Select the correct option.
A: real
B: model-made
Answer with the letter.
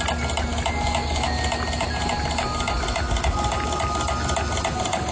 A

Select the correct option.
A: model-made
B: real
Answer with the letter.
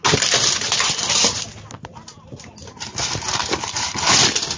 B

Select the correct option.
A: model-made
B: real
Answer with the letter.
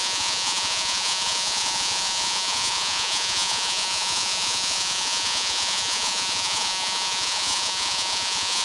A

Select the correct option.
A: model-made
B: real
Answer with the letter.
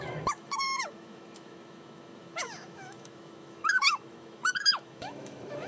A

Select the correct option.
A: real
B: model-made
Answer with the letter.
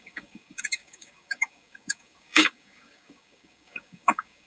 B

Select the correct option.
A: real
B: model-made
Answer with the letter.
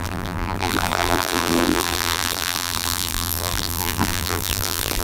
B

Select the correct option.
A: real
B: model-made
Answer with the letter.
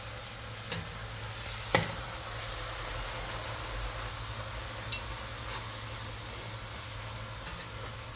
A